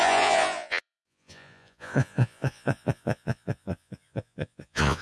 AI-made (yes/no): yes